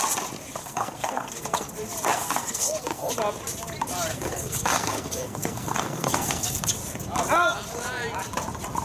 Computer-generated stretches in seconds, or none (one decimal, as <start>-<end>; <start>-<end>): 0.6-1.7; 2.1-3.1; 4.1-6.7